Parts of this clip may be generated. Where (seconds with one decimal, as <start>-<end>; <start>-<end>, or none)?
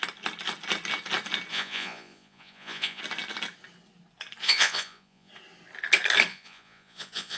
1.5-3.0; 4.4-5.3; 6.3-7.4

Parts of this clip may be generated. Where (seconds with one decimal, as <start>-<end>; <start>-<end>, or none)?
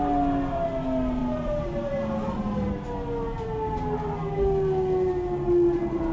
1.2-2.7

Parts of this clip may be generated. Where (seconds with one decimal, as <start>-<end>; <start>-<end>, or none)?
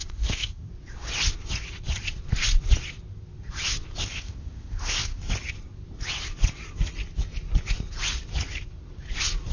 0.0-0.7; 4.0-5.2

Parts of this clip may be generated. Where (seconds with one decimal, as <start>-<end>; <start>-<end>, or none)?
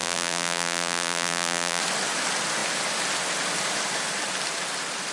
0.0-1.8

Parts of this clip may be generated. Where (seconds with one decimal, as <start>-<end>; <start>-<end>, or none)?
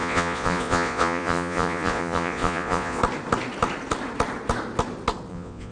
0.0-3.0; 5.3-5.7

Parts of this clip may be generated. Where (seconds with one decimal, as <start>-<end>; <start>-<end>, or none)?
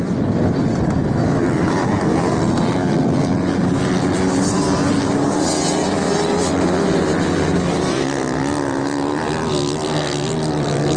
none